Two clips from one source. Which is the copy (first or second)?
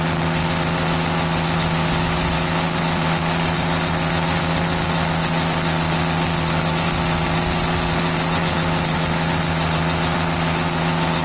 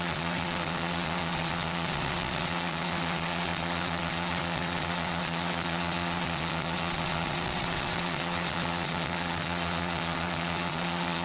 second